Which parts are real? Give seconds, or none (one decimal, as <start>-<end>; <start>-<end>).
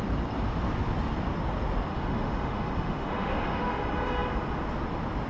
0.0-1.9; 3.8-5.3